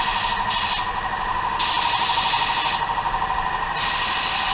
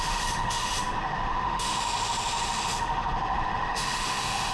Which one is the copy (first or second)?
second